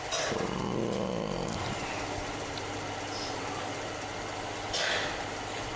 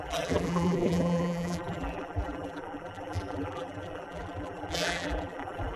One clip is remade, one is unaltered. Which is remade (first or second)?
second